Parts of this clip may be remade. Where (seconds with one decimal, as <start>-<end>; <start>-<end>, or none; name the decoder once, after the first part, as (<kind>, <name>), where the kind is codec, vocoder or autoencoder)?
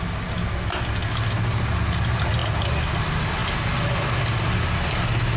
none